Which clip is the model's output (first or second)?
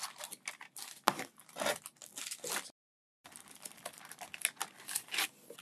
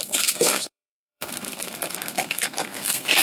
second